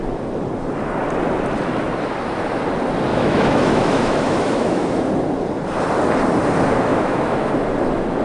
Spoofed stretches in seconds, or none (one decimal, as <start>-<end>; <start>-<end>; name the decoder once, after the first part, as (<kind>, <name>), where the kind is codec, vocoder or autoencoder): 3.1-5.1 (autoencoder, DAC-VAE); 6.9-7.5